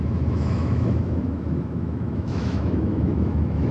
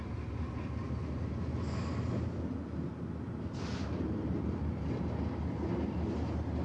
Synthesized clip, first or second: first